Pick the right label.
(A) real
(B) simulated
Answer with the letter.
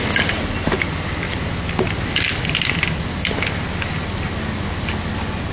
A